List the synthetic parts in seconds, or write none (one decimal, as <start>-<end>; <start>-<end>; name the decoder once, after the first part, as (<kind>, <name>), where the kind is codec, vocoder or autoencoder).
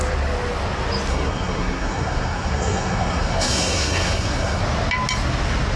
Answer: 1.1-4.6 (codec, SNAC)